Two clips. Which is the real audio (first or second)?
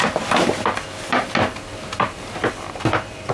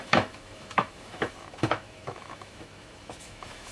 first